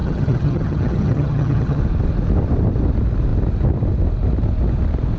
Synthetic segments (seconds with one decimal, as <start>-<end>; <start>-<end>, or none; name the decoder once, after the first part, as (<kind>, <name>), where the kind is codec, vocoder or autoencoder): 0.0-1.8 (vocoder, HiFi-GAN)